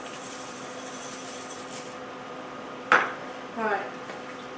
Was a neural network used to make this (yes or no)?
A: yes